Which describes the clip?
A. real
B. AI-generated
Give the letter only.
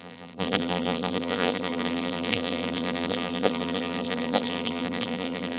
B